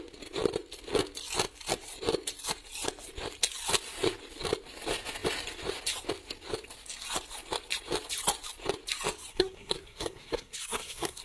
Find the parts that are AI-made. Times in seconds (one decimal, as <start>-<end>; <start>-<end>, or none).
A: 9.3-11.2